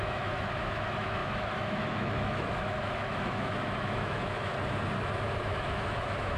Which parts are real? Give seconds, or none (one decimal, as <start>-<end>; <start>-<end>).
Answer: 4.5-5.4